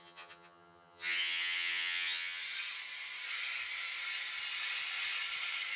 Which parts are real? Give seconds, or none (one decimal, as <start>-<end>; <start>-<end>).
2.4-5.8